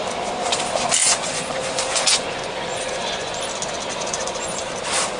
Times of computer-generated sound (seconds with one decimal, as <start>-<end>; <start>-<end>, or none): 1.0-3.4; 3.9-4.7

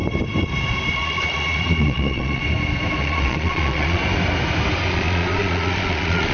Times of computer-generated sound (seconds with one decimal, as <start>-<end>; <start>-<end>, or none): 0.9-2.4; 3.0-4.0; 4.9-6.3

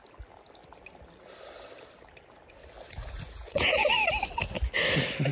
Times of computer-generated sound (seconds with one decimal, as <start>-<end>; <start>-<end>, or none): 3.0-4.0

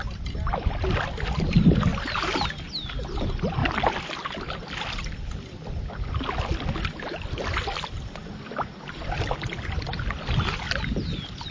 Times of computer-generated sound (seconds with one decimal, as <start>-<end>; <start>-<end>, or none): none

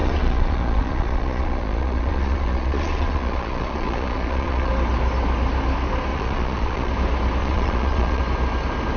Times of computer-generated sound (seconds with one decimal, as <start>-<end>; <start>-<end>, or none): 0.0-4.7; 6.1-6.9; 7.4-8.2

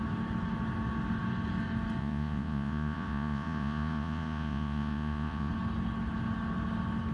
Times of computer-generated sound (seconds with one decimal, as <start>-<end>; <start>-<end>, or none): 2.0-5.5

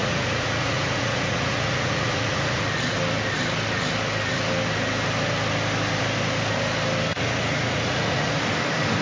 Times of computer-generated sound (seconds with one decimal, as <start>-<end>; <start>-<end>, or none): 0.0-2.6; 7.1-8.4

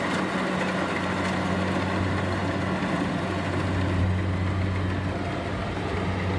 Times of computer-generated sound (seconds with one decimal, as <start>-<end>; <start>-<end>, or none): none